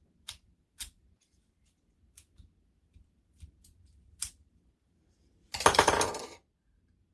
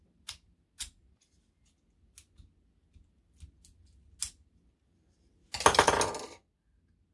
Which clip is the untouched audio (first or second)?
second